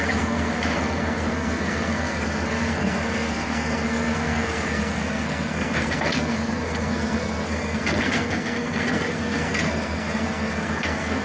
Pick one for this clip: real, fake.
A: fake